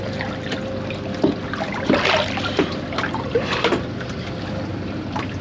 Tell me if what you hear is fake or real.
real